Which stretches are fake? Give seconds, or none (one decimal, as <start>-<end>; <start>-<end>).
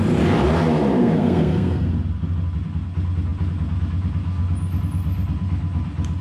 1.0-1.9